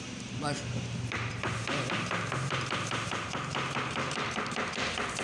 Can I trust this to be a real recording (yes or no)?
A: no